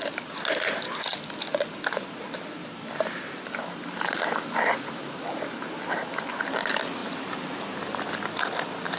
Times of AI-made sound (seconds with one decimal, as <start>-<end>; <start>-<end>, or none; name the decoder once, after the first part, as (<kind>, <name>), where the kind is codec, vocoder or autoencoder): 7.0-8.0 (vocoder, BigVGAN v2)